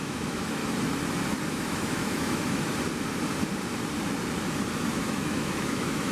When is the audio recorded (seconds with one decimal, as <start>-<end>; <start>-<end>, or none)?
0.6-1.5; 2.7-4.9